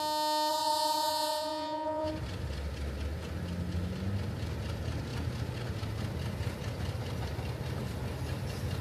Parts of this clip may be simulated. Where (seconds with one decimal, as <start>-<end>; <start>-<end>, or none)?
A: 0.5-2.1